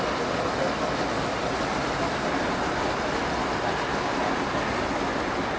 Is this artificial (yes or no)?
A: no